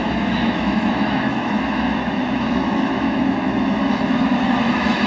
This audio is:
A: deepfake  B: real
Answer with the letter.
A